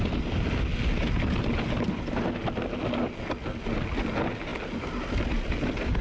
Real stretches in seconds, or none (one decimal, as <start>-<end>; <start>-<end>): 0.0-6.0

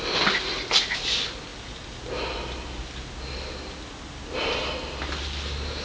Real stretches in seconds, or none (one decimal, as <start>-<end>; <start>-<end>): 0.0-5.8

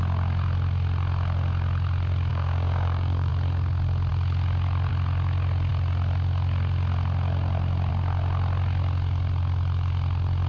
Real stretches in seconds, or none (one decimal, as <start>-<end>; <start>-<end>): 0.0-2.3; 3.3-10.5

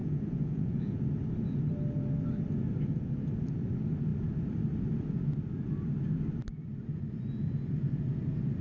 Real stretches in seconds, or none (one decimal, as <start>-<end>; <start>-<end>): 1.1-8.6